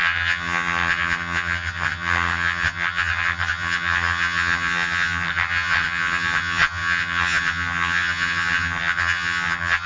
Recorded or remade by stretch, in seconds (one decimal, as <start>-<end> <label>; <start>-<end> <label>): 0.0-9.9 remade